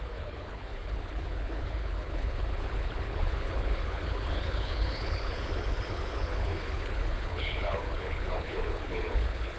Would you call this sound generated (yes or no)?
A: yes